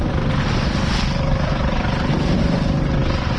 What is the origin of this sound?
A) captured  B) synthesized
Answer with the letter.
A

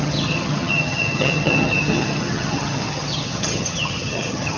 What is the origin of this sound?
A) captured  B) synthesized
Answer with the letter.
B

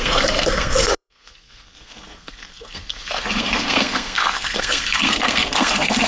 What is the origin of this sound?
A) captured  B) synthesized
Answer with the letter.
B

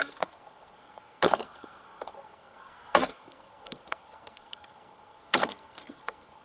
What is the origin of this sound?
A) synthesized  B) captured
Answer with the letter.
A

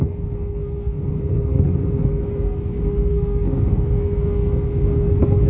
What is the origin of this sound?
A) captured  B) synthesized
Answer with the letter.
B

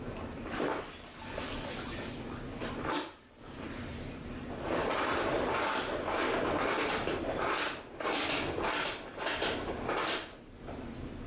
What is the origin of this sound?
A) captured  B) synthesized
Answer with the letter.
A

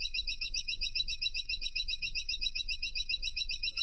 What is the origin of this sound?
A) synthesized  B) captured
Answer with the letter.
A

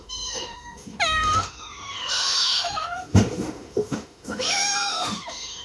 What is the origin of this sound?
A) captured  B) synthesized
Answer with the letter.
B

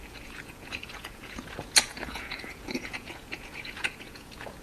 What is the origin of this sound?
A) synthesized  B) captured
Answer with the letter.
A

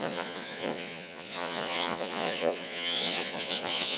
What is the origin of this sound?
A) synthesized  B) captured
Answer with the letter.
A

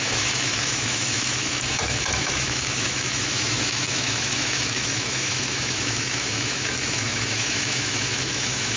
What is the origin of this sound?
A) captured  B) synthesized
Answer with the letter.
B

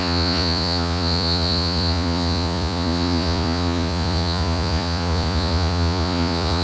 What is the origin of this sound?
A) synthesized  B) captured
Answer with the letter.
A